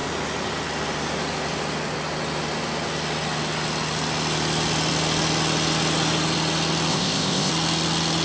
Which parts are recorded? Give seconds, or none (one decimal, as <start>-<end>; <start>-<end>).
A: 0.0-6.9; 7.5-8.2